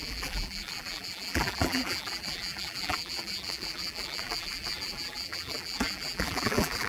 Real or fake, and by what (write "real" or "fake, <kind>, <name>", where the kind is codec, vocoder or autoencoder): fake, vocoder, BigVGAN v2